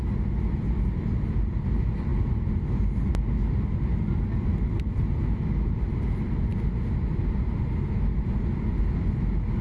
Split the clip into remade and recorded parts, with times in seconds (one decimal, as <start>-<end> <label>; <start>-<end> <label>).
0.0-9.6 recorded